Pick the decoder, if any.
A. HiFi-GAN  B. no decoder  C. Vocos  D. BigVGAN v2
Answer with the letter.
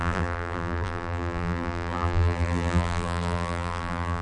D